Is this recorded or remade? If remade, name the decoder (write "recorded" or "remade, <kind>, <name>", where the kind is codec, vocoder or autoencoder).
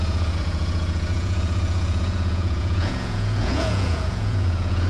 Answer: remade, vocoder, Vocos